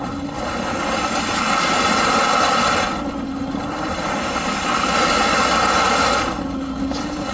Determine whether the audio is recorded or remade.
recorded